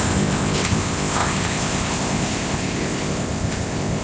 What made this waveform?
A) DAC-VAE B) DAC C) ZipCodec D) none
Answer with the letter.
C